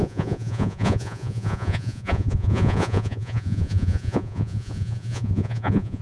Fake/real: fake